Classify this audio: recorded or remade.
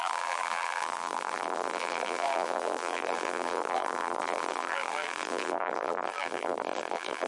remade